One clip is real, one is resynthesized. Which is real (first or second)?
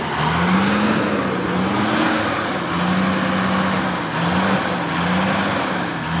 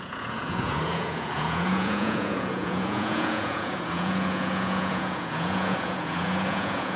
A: first